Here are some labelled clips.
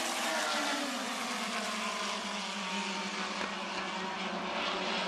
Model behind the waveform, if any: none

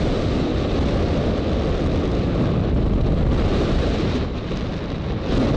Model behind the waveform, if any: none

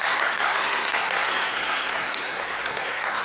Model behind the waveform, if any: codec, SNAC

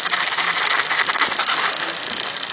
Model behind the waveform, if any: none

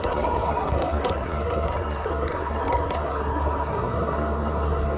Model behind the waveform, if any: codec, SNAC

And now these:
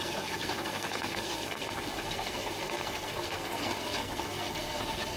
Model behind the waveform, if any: codec, SNAC